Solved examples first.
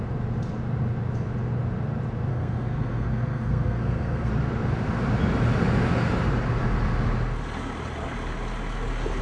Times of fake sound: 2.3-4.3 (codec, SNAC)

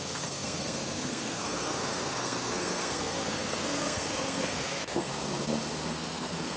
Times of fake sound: 0.0-5.1 (codec, SNAC); 5.9-6.6